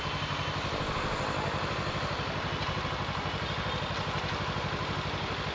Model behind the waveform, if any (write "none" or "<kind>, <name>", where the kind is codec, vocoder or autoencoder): none